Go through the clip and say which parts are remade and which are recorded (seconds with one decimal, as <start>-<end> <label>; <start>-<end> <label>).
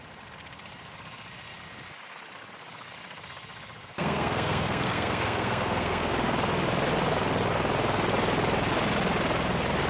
0.0-3.8 recorded; 3.8-6.1 remade; 6.1-9.9 recorded